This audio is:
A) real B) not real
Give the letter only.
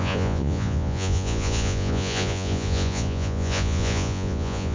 B